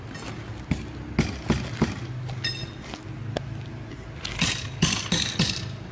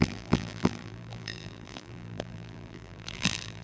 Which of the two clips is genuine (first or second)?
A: first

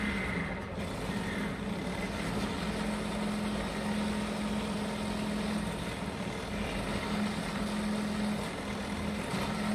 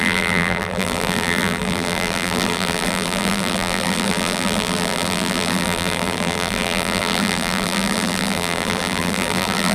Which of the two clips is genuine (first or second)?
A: first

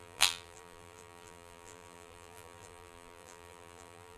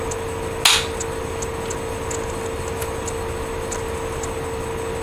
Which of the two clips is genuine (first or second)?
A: second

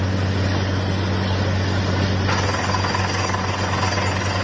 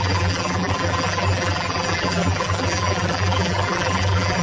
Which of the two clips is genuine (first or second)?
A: first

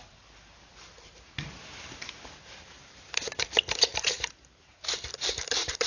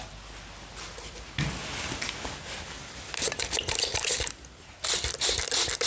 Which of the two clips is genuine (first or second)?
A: second